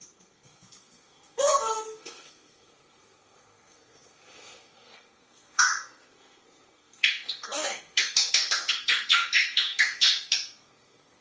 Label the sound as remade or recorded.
remade